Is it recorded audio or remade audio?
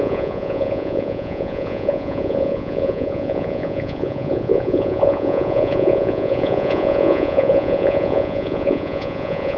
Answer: remade